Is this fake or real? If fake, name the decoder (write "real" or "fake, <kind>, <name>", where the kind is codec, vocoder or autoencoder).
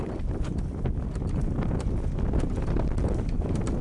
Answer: fake, vocoder, BigVGAN v2